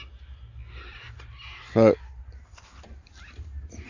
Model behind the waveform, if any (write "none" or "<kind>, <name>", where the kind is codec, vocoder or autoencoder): none